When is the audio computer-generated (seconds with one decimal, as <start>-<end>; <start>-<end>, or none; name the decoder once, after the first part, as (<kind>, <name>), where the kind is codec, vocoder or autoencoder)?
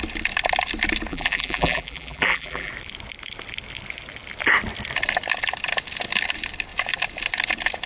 1.1-2.7 (vocoder, BigVGAN v2)